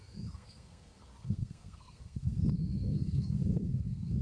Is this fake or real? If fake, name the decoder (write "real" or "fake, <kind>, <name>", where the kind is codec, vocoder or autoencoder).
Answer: fake, codec, SNAC